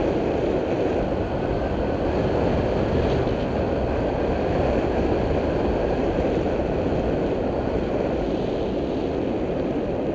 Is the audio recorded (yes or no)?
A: yes